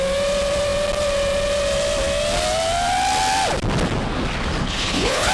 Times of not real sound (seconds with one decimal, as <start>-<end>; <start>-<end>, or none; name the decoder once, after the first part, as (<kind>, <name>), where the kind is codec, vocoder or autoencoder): 4.6-5.3 (codec, HILCodec)